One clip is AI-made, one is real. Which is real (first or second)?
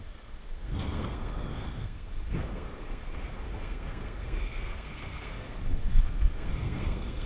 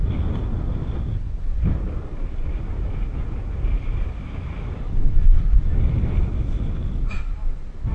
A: second